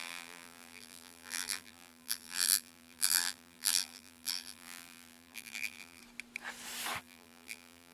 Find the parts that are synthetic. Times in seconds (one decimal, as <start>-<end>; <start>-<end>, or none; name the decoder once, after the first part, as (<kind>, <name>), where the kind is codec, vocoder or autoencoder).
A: 0.0-6.0 (vocoder, BigVGAN v2); 7.0-7.9